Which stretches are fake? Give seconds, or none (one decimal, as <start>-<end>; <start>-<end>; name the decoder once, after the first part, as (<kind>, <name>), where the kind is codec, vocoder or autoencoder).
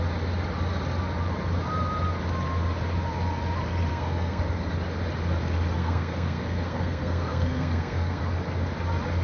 3.9-4.7 (codec, SNAC); 5.8-8.2